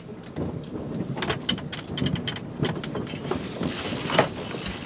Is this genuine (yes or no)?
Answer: yes